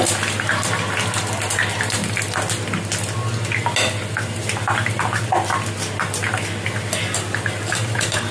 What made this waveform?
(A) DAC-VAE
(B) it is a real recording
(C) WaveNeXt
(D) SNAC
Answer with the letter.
B